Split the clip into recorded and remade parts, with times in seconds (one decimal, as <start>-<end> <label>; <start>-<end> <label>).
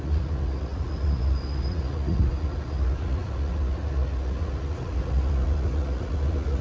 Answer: 0.0-6.6 remade